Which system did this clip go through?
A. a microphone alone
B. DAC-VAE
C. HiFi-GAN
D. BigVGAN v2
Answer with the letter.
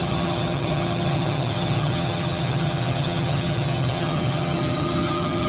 C